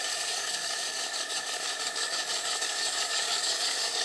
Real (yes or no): no